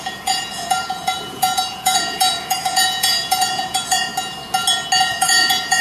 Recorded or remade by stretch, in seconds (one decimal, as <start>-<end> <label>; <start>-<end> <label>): 0.0-4.1 remade; 4.1-5.0 recorded; 5.0-5.8 remade